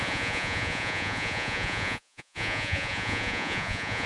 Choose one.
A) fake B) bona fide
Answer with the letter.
A